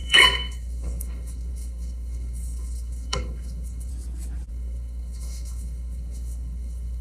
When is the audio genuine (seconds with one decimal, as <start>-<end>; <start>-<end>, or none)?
3.9-4.5